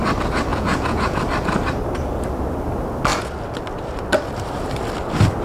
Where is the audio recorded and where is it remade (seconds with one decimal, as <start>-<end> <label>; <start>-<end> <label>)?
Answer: 0.0-0.5 recorded; 0.5-1.2 remade; 1.2-5.4 recorded